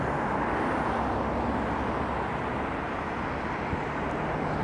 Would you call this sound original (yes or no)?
yes